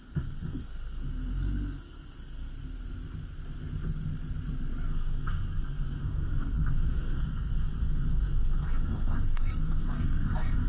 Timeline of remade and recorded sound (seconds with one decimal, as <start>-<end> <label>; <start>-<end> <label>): 0.0-2.5 remade; 2.5-4.9 recorded; 4.9-10.7 remade